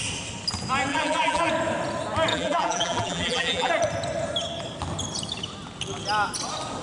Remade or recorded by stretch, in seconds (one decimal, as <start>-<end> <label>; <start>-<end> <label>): 0.0-0.9 recorded; 0.9-1.5 remade; 1.5-2.3 recorded; 2.3-3.7 remade; 3.7-6.8 recorded